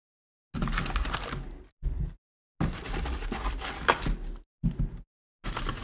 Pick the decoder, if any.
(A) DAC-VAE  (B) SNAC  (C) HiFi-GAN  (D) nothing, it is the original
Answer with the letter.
D